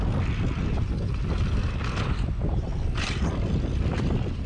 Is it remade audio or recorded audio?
recorded